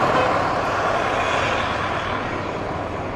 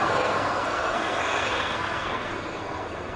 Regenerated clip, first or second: second